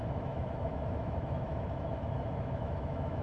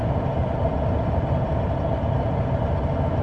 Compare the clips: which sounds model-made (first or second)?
first